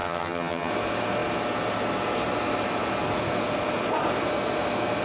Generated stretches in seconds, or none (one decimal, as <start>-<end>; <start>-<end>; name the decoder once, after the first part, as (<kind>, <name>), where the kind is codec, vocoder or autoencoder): 0.0-0.7 (vocoder, HiFi-GAN)